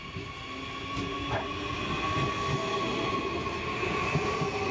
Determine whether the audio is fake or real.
real